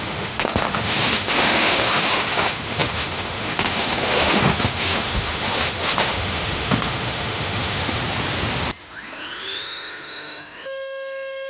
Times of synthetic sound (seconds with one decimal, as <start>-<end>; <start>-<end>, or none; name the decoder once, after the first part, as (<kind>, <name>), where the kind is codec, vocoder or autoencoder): 0.0-8.0 (autoencoder, DAC-VAE); 8.8-11.5